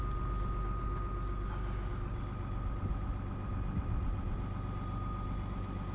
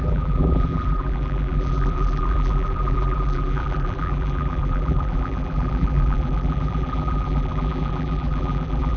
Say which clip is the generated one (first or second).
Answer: second